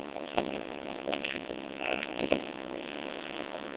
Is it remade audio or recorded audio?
remade